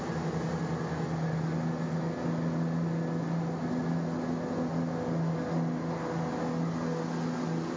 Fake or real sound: real